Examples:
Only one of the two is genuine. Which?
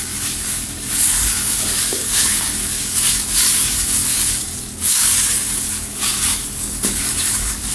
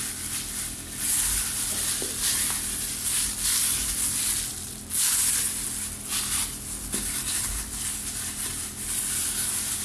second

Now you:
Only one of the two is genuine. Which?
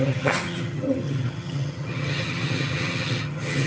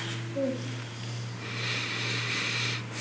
second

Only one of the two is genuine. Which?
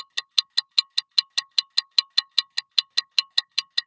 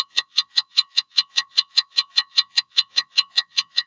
first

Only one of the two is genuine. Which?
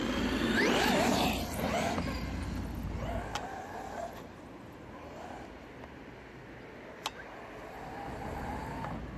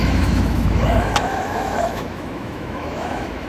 first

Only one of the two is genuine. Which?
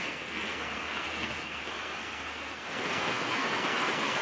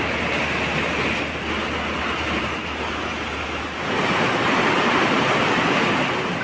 second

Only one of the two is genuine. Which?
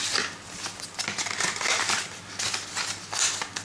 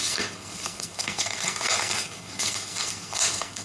first